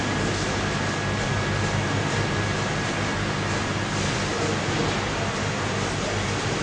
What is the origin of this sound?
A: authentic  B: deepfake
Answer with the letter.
A